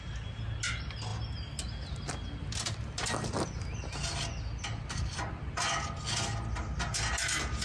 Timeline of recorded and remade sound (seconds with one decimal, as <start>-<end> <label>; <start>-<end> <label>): 0.0-7.6 recorded